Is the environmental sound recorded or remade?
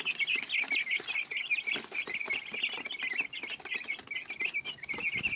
recorded